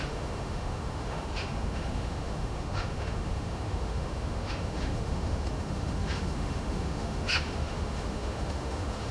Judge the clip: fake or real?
fake